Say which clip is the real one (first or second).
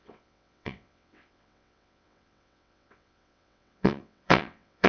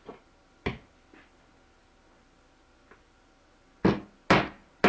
second